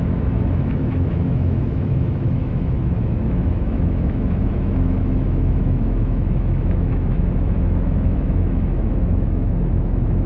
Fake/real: fake